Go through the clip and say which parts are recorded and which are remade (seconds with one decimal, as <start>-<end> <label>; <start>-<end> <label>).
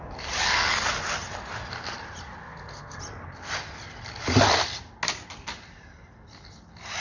0.0-2.4 recorded; 2.4-3.0 remade; 3.0-7.0 recorded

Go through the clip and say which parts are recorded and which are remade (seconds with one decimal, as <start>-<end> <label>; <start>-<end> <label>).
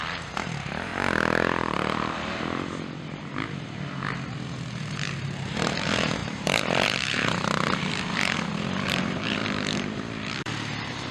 0.0-0.9 remade; 0.9-4.8 recorded; 4.8-9.4 remade; 9.4-10.4 recorded; 10.4-11.1 remade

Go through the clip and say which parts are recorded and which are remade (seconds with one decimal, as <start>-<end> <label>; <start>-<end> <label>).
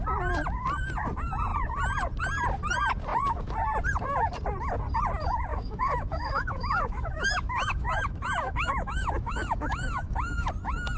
0.0-5.5 recorded; 5.5-10.5 remade; 10.5-11.0 recorded